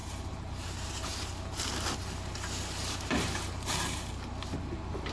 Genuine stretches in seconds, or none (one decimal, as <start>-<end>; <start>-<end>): 0.7-2.0; 4.1-5.1